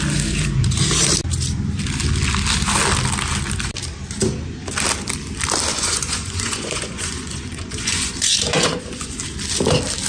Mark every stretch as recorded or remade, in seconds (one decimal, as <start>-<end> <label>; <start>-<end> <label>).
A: 0.0-5.7 recorded; 5.7-9.2 remade; 9.2-10.1 recorded